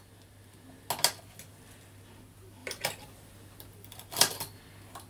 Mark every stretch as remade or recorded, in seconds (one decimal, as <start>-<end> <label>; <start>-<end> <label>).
0.0-2.6 recorded; 2.6-4.6 remade; 4.6-5.1 recorded